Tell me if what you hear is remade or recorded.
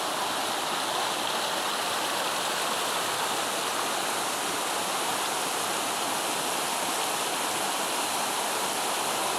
recorded